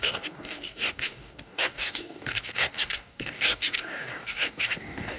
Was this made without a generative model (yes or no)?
no